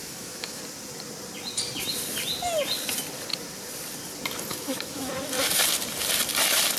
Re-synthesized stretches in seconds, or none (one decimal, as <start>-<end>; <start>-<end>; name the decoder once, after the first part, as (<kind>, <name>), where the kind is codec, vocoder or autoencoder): 0.0-0.6 (autoencoder, DAC-VAE); 4.5-5.1